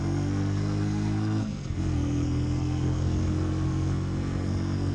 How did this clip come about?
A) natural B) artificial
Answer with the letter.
B